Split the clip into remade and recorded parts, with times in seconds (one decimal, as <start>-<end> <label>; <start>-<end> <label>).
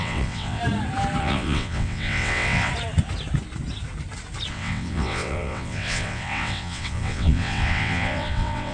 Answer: 0.0-0.6 remade; 0.6-1.2 recorded; 1.2-2.7 remade; 2.7-4.5 recorded; 4.5-8.7 remade